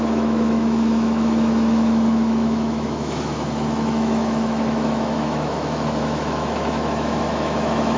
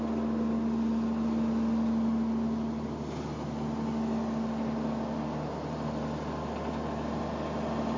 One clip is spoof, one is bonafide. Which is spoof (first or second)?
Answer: first